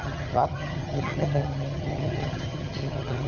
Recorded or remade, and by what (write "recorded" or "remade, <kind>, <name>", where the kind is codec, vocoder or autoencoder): remade, vocoder, HiFi-GAN